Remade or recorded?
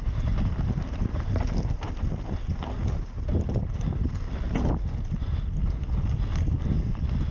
recorded